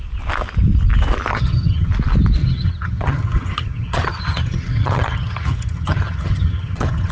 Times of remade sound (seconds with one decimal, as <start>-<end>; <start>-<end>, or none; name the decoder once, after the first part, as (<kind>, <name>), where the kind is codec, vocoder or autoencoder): 1.3-1.9 (vocoder, HiFi-GAN); 2.4-7.1